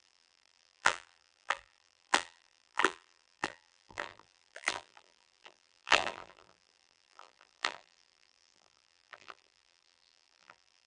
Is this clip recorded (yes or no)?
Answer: no